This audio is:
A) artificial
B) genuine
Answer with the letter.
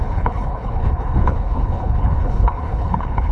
A